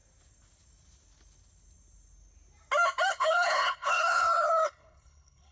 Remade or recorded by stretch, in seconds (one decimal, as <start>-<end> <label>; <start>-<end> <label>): 0.0-3.1 recorded; 3.1-5.5 remade